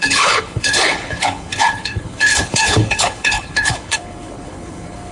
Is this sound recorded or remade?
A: remade